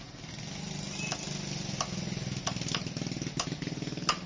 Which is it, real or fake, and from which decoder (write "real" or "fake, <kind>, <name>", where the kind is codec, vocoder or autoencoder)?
real